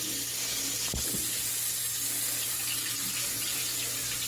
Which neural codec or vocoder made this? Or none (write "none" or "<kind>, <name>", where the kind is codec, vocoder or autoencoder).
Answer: none